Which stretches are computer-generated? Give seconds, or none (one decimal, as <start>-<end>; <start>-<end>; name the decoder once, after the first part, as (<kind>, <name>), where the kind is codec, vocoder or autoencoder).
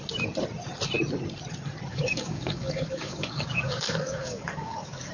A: 1.9-5.1 (codec, DAC)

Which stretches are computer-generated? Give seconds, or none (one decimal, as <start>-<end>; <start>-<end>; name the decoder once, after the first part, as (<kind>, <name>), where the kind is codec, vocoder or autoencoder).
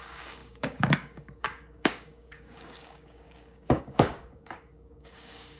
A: 0.0-5.6 (codec, DAC)